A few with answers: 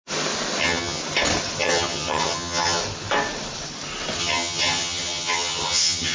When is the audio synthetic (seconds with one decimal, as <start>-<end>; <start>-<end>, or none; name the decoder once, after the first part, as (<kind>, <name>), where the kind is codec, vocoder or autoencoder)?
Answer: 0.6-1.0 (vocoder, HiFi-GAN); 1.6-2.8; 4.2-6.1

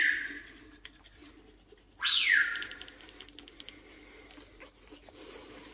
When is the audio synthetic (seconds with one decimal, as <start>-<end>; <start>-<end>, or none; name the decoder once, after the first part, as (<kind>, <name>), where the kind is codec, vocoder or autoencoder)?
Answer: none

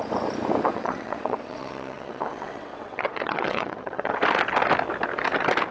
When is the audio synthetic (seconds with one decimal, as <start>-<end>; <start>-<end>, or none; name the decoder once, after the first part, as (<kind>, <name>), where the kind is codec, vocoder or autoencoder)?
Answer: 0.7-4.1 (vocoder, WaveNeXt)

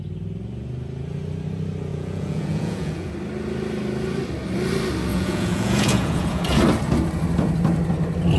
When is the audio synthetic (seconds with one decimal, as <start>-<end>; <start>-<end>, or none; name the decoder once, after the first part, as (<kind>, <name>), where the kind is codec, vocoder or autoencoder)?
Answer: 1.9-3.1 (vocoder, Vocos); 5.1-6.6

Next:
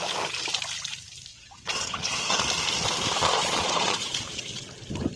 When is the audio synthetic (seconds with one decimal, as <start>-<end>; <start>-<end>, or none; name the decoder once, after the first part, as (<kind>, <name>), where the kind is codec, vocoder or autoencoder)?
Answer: 1.3-2.4 (vocoder, Vocos); 3.2-4.7

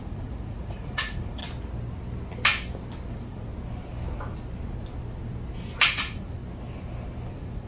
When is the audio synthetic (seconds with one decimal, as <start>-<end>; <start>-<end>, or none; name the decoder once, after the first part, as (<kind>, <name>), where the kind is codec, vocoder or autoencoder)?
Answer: 0.0-1.4 (vocoder, Vocos); 3.1-3.5; 5.9-6.4; 7.3-7.7